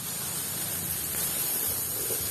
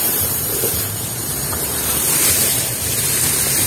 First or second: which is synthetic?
second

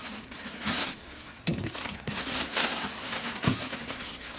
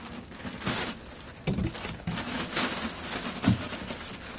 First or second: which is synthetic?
first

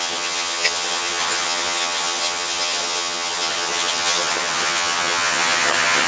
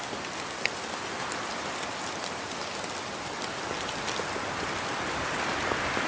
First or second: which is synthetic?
first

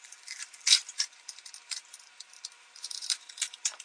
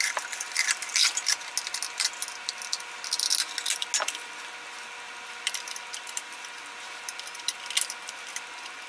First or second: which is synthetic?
first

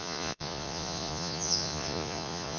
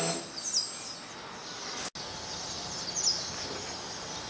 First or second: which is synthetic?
first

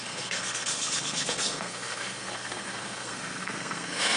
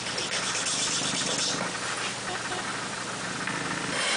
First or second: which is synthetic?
first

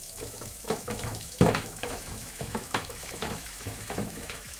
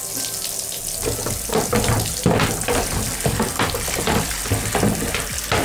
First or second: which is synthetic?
first